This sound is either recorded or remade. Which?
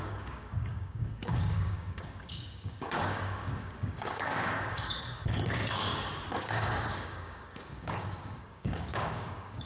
remade